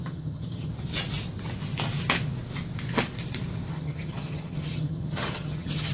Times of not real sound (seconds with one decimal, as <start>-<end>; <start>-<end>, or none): 0.0-0.7; 3.7-5.9